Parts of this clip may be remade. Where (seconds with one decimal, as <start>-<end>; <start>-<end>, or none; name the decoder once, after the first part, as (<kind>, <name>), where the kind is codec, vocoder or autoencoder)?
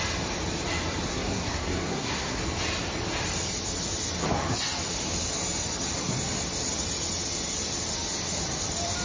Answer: 1.1-2.4 (codec, SNAC)